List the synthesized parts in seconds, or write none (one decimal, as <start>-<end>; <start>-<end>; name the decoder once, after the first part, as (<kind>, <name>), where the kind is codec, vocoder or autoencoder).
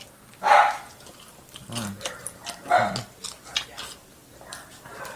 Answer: none